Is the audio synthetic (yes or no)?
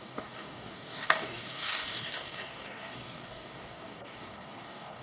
yes